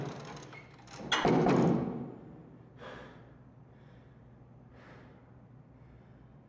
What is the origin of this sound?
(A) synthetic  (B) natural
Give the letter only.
B